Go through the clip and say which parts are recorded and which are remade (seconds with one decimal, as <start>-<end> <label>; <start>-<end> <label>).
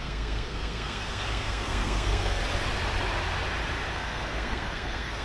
0.0-2.4 remade; 2.4-3.9 recorded; 3.9-5.2 remade